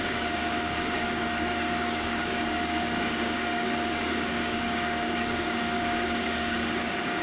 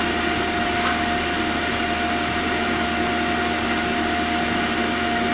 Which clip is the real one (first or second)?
second